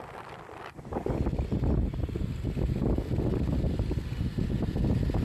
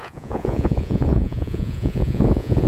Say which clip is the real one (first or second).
first